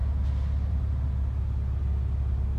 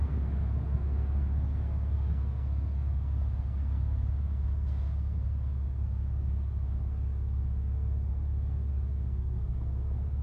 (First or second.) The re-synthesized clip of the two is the second